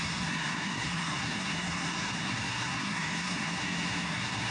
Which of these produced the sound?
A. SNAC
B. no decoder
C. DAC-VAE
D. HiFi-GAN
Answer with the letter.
A